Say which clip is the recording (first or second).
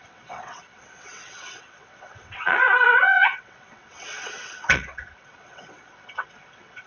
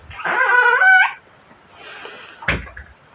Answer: second